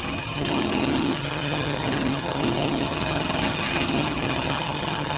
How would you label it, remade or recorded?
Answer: remade